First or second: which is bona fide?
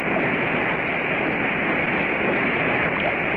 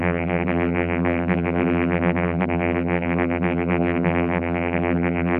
first